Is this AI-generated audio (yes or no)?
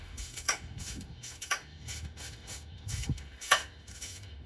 yes